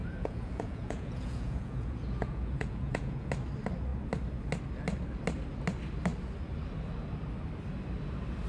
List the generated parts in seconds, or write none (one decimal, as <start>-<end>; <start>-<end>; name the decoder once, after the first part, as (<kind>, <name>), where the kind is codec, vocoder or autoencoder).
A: 0.0-3.3 (vocoder, Vocos)